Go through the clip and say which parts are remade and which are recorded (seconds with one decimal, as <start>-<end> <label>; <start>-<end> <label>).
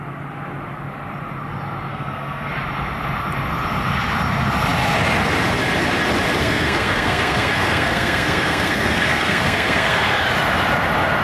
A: 0.0-1.9 recorded; 1.9-2.5 remade; 2.5-6.4 recorded; 6.4-10.2 remade; 10.2-11.2 recorded